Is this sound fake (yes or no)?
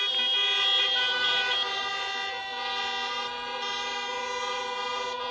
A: no